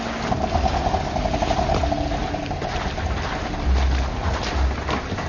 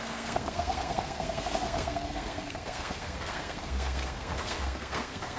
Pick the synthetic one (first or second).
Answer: second